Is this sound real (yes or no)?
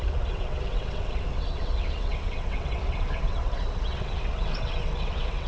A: no